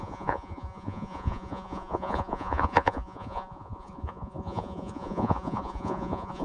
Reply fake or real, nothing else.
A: fake